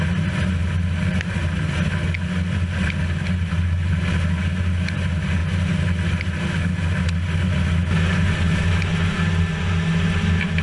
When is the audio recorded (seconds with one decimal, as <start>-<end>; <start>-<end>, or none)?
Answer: 0.0-10.6